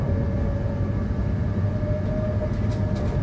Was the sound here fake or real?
real